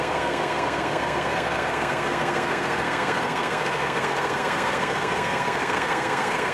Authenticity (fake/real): fake